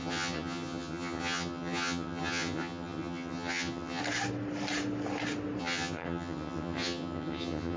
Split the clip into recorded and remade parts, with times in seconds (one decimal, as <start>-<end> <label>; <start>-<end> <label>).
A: 0.0-4.0 remade; 4.0-5.6 recorded; 5.6-7.8 remade